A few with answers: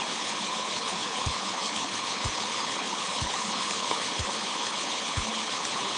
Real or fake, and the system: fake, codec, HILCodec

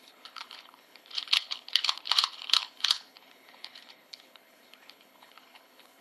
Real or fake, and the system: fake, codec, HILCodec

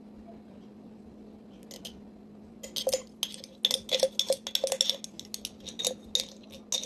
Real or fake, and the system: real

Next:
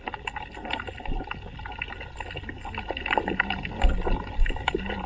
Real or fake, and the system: real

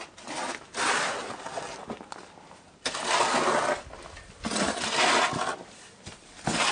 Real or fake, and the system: real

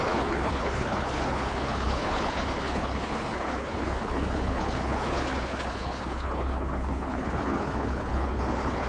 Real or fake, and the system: fake, codec, HILCodec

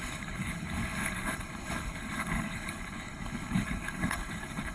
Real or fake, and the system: fake, codec, HILCodec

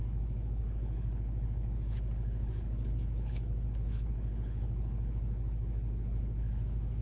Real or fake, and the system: fake, codec, HILCodec